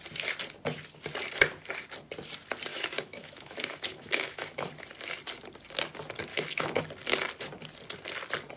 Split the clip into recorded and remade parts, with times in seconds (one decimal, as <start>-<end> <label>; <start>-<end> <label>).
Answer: 0.0-2.7 recorded; 2.7-4.7 remade; 4.7-6.3 recorded; 6.3-6.8 remade; 6.8-8.6 recorded